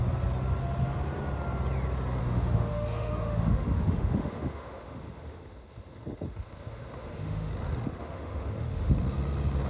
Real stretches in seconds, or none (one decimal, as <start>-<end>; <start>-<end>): 0.0-2.2; 7.5-8.0; 8.9-9.7